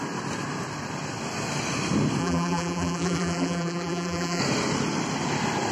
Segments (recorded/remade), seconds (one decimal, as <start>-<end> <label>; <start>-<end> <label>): 0.0-2.2 recorded; 2.2-4.4 remade; 4.4-5.7 recorded